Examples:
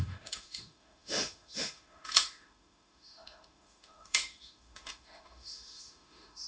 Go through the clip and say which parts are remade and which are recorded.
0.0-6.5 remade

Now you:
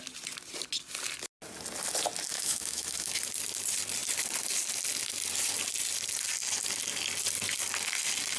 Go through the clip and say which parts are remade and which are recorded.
0.0-2.3 recorded; 2.3-3.2 remade; 3.2-8.4 recorded

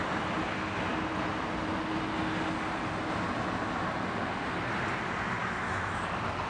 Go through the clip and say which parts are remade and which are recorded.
0.0-5.4 recorded; 5.4-6.0 remade; 6.0-6.5 recorded

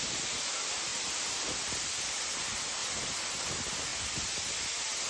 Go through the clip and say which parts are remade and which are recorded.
0.0-5.1 recorded

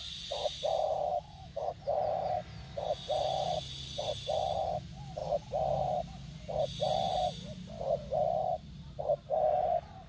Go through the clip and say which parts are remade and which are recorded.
0.0-1.1 recorded; 1.1-1.7 remade; 1.7-10.1 recorded

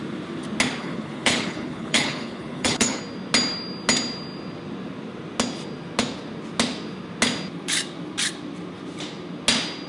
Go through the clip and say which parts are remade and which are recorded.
0.0-0.8 recorded; 0.8-3.0 remade; 3.0-9.9 recorded

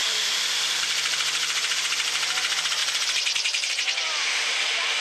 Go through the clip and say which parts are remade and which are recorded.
0.0-1.8 remade; 1.8-2.8 recorded; 2.8-3.7 remade; 3.7-5.0 recorded